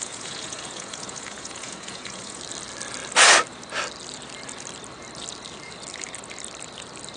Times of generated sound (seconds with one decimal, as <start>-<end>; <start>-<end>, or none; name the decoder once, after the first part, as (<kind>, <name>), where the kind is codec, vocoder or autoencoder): 0.0-2.4 (vocoder, Vocos)